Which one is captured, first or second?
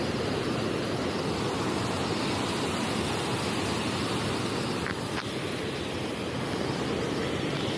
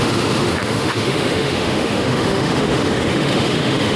first